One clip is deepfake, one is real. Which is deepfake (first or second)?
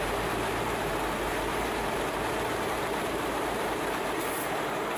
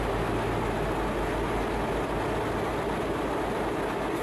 first